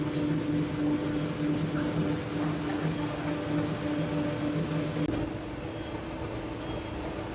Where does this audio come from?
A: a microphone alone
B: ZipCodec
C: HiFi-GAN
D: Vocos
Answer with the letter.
A